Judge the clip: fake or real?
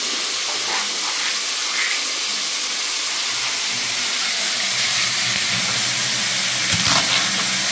real